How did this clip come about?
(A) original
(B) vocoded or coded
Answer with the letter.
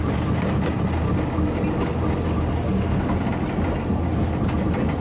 A